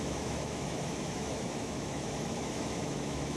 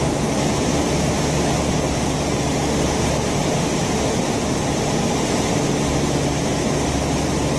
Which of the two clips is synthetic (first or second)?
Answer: first